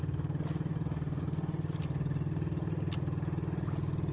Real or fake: real